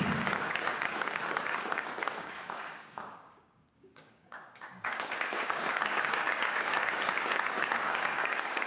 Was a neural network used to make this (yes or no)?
yes